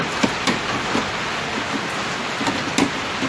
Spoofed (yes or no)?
no